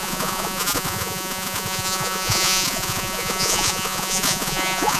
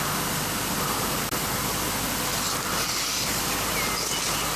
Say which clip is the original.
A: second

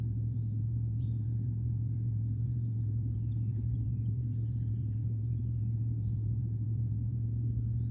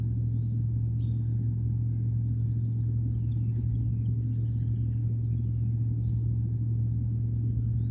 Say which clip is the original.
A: second